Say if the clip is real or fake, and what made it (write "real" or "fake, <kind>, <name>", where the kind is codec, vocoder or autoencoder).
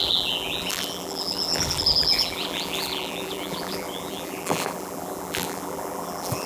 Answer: fake, vocoder, BigVGAN v2